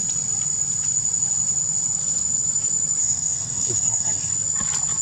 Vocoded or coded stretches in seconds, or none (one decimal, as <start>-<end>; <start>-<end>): 3.0-4.3